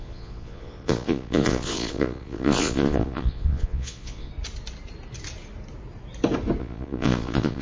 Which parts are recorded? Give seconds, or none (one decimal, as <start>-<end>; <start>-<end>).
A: 4.3-6.6